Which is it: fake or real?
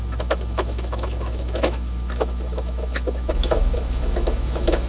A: fake